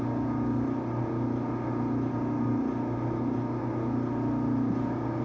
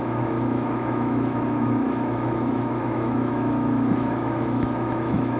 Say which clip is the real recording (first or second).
first